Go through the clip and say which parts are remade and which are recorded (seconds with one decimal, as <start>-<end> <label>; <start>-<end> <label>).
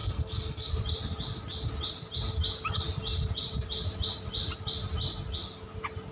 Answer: 0.0-0.7 remade; 0.7-6.1 recorded